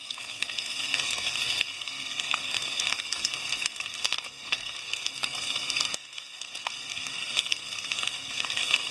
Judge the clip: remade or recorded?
remade